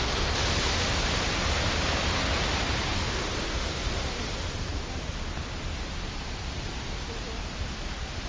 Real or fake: real